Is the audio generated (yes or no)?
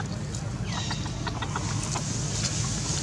no